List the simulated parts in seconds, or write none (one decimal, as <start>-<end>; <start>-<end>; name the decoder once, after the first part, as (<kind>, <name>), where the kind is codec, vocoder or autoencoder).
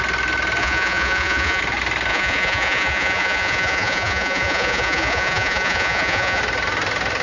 0.6-1.6 (vocoder, Vocos); 2.1-6.4